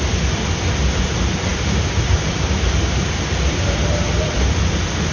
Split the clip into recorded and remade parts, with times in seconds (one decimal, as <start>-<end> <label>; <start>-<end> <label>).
0.0-1.5 recorded; 1.5-4.6 remade; 4.6-5.1 recorded